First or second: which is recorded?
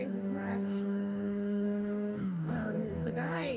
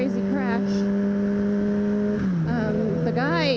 second